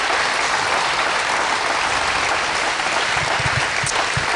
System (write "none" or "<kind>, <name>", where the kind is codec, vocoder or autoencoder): none